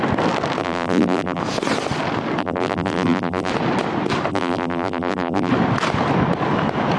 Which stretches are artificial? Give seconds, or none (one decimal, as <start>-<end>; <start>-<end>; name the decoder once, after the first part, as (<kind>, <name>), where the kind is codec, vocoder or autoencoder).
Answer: 0.6-1.4 (vocoder, BigVGAN v2); 2.4-3.5; 4.3-5.5